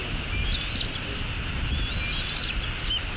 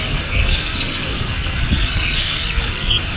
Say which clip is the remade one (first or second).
second